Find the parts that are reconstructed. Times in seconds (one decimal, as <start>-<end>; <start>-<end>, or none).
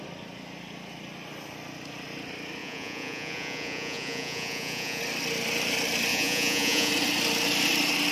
2.6-5.0; 6.1-6.9